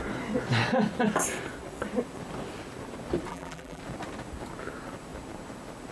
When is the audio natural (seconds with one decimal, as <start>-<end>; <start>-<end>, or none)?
0.0-3.3; 3.8-5.9